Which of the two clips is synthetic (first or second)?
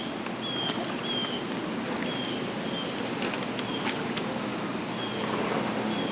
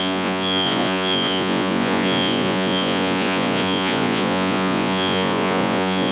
second